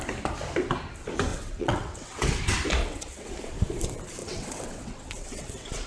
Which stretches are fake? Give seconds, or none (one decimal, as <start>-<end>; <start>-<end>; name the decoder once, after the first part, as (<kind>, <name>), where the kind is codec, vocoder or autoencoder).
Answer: 1.3-2.4 (vocoder, WaveNeXt); 2.8-3.3; 4.2-5.9